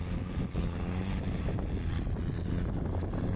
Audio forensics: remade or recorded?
recorded